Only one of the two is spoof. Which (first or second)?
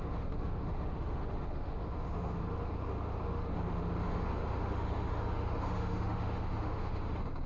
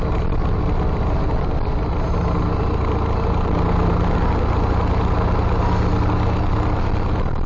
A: first